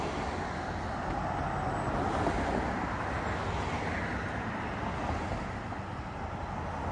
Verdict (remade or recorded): recorded